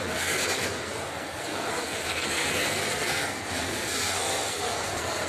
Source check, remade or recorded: remade